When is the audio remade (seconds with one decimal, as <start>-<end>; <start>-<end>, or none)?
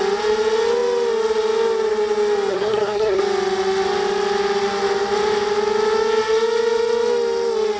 2.5-3.2